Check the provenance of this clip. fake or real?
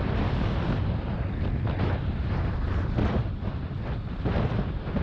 real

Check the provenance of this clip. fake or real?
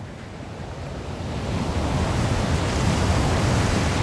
real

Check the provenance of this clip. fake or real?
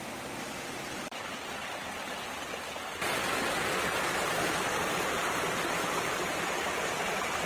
fake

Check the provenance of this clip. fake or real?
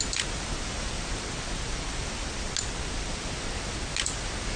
real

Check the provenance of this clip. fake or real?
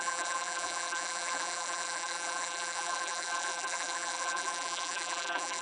fake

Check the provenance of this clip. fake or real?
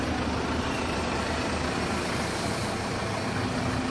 fake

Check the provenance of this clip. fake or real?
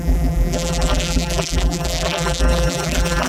fake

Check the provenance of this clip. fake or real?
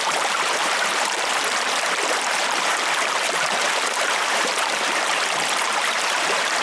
fake